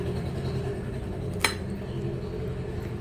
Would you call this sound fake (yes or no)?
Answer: no